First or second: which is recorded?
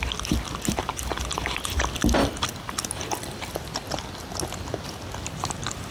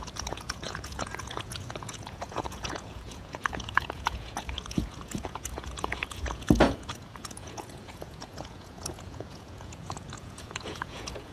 first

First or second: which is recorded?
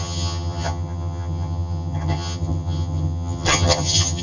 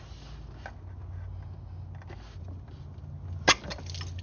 second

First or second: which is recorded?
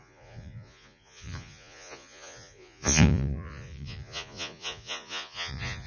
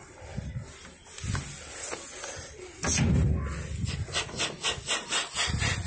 second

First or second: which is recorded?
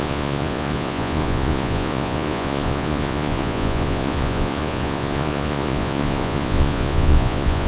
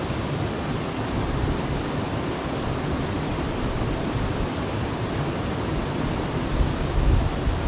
second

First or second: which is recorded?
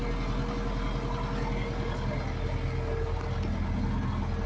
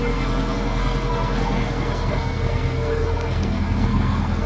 first